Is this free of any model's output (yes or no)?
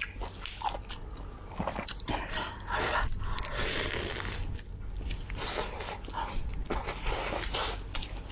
yes